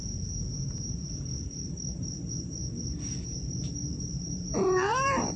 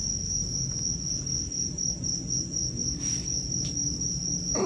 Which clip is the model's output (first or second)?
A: first